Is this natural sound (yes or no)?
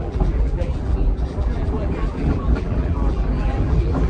no